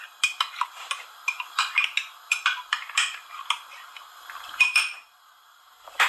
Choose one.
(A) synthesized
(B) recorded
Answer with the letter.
B